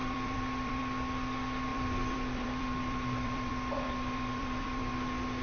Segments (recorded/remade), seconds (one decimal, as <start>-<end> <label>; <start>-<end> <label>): 0.0-0.8 remade; 0.8-1.7 recorded; 1.7-4.9 remade; 4.9-5.4 recorded